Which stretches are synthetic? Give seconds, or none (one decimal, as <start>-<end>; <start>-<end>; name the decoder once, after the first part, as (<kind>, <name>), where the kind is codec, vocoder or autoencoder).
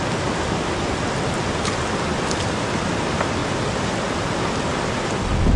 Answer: none